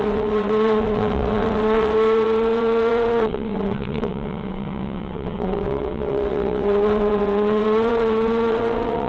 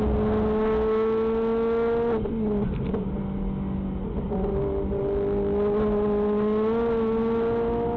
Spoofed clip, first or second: first